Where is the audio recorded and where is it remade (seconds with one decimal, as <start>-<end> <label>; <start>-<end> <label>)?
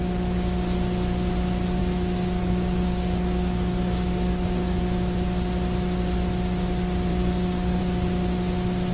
0.0-1.8 recorded; 1.8-4.8 remade; 4.8-7.1 recorded; 7.1-7.8 remade; 7.8-8.9 recorded